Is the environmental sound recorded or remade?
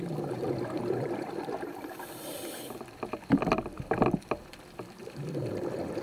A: remade